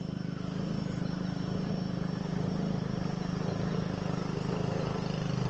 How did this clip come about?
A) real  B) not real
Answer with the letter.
A